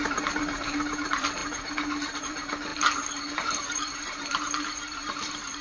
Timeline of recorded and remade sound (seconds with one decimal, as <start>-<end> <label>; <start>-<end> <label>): 0.0-5.6 remade

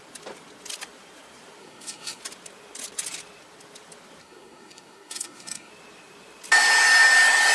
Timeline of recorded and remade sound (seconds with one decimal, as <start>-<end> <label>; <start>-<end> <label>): 0.0-1.6 recorded; 1.6-2.2 remade; 2.2-4.2 recorded; 4.2-5.7 remade; 5.7-7.5 recorded

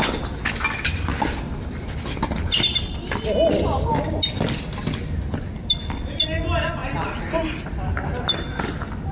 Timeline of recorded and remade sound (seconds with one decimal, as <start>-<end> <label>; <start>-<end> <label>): 0.0-9.1 recorded

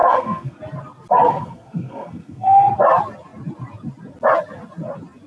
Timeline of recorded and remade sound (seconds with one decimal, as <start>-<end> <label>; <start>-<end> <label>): 0.0-0.6 remade; 0.6-1.3 recorded; 1.3-2.7 remade; 2.7-5.3 recorded

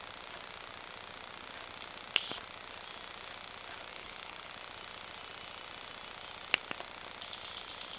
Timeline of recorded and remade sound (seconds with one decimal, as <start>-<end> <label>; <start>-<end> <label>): 0.0-3.9 recorded; 3.9-4.5 remade; 4.5-8.0 recorded